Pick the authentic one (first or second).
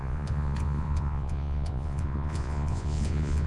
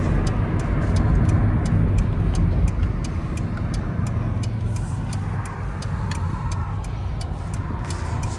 second